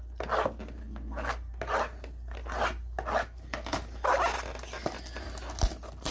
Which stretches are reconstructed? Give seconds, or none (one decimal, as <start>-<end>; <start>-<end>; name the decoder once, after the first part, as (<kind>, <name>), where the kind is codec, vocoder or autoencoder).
0.8-1.5 (codec, SNAC)